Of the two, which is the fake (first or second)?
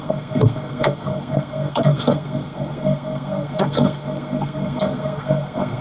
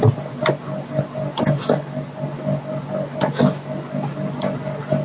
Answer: first